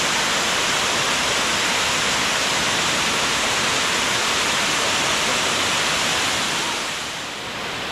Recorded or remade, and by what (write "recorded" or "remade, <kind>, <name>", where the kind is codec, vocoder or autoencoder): recorded